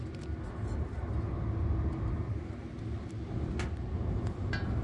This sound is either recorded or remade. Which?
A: recorded